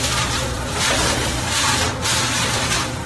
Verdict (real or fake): fake